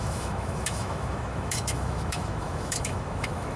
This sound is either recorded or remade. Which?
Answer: remade